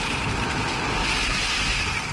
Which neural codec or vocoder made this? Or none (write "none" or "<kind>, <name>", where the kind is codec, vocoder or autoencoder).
none